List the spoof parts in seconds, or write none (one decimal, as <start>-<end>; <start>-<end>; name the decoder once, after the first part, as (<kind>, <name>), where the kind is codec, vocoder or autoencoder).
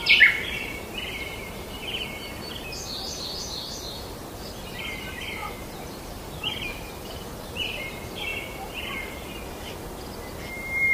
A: 0.0-8.3 (vocoder, BigVGAN v2); 10.5-10.9